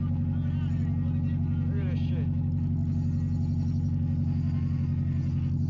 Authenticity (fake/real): real